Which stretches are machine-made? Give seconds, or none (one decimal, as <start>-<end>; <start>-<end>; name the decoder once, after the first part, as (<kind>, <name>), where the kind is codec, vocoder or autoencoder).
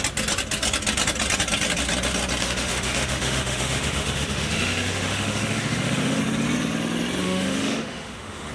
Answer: 2.4-6.2 (autoencoder, DAC-VAE); 7.2-8.5